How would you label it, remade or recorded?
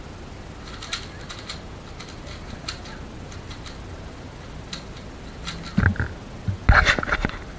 recorded